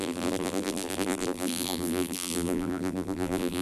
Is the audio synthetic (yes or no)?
yes